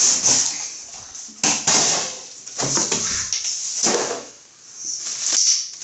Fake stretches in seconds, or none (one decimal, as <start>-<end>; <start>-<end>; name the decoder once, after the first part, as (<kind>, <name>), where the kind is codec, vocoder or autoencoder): 3.8-4.4 (autoencoder, DAC-VAE)